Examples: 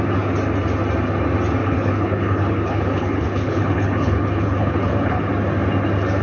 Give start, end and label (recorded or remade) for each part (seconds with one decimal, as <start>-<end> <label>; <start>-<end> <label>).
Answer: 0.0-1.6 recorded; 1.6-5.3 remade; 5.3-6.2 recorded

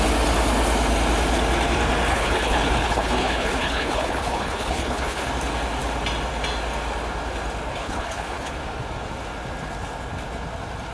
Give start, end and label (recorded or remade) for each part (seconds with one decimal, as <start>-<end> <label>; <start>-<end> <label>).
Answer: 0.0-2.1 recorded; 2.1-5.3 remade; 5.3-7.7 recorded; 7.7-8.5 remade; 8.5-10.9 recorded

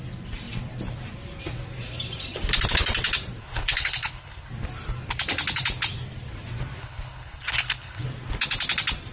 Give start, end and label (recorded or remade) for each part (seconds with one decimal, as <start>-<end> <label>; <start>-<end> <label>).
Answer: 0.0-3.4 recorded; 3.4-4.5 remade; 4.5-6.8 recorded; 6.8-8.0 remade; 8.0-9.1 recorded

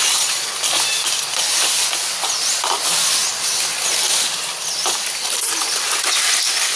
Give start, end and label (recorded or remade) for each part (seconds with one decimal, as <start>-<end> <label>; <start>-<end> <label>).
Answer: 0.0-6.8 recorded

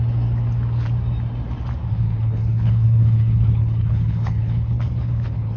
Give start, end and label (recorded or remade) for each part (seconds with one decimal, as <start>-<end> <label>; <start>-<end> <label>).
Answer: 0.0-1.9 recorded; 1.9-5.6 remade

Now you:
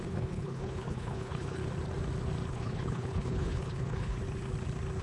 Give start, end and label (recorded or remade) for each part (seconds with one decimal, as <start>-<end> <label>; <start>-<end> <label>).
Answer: 0.0-1.6 remade; 1.6-2.5 recorded; 2.5-4.2 remade; 4.2-5.0 recorded

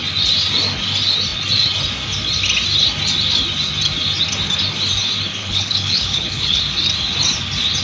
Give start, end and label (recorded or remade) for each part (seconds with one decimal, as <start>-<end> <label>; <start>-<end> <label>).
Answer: 0.0-5.4 recorded; 5.4-6.6 remade; 6.6-7.8 recorded

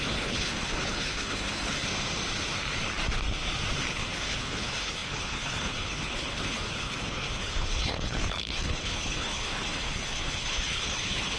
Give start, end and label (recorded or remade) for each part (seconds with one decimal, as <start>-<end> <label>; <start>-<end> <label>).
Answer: 0.0-1.9 remade; 1.9-3.9 recorded; 3.9-11.4 remade